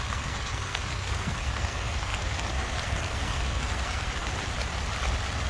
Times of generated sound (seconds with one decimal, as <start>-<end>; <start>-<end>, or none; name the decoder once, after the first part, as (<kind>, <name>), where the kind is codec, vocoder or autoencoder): 0.0-4.3 (codec, SNAC)